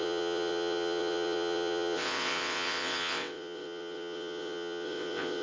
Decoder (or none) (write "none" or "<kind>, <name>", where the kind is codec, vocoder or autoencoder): vocoder, WaveNeXt